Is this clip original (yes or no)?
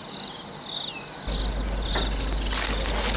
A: yes